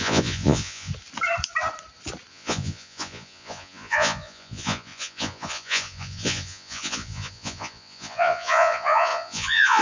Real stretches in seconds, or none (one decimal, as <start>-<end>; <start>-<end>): 0.9-2.3